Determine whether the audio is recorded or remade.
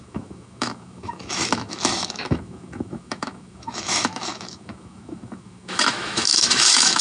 remade